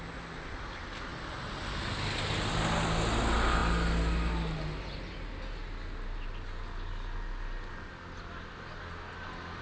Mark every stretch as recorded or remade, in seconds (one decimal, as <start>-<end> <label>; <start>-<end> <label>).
0.0-9.6 recorded

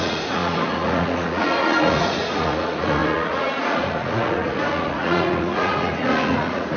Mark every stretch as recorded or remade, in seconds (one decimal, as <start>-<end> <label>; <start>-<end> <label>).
0.0-6.8 remade

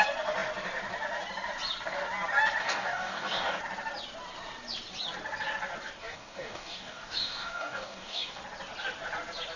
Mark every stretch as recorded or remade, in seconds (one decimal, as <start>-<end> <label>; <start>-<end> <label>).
0.0-2.6 recorded; 2.6-3.6 remade; 3.6-6.0 recorded; 6.0-8.4 remade; 8.4-9.6 recorded

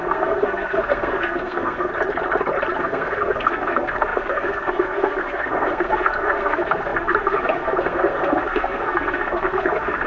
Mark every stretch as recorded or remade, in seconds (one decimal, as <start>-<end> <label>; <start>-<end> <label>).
0.0-1.9 remade; 1.9-2.8 recorded; 2.8-10.1 remade

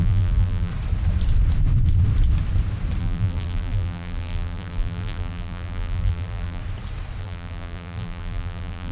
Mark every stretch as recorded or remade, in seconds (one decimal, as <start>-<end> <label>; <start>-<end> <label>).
0.0-0.7 remade; 0.7-3.0 recorded; 3.0-6.6 remade; 6.6-7.2 recorded; 7.2-8.9 remade